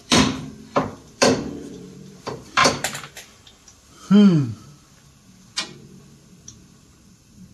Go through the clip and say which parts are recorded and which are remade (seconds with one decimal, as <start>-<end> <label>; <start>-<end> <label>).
0.0-2.6 remade; 2.6-7.0 recorded; 7.0-7.5 remade